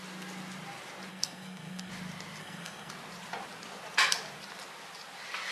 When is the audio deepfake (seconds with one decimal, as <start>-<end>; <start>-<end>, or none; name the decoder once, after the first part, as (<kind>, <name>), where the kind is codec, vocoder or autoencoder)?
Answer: 1.1-1.9 (codec, SNAC); 2.4-2.9